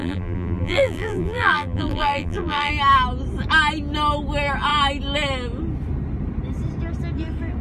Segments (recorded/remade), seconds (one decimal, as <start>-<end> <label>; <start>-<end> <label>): 0.0-2.7 remade; 2.7-7.6 recorded